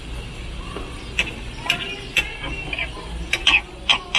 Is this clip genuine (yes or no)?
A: yes